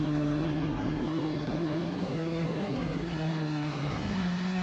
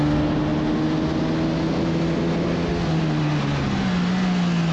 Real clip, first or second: second